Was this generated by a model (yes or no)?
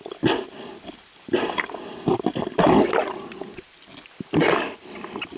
no